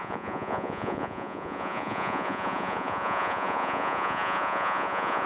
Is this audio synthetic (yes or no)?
yes